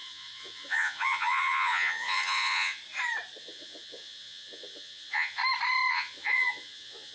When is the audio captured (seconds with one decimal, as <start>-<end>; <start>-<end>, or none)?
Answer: 2.8-3.4; 5.4-5.9